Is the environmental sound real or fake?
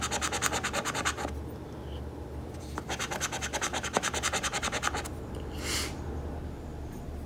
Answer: real